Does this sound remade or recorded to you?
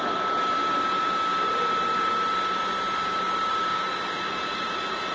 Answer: recorded